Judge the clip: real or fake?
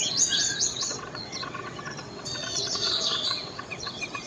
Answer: fake